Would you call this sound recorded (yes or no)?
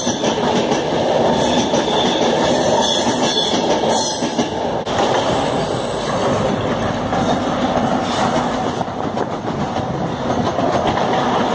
yes